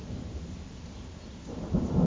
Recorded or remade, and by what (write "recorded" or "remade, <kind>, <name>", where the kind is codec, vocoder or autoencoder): recorded